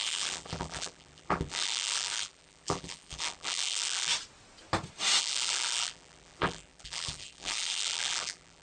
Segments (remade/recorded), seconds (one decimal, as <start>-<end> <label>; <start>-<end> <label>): 0.0-4.1 remade; 4.1-5.2 recorded; 5.2-8.6 remade